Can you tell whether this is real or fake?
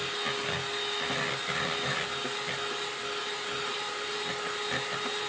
real